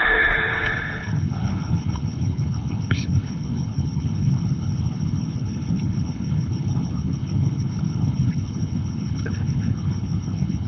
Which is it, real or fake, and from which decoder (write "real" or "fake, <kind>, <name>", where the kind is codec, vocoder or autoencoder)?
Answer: fake, codec, HILCodec